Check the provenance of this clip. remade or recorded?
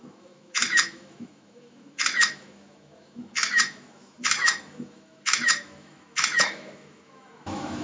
remade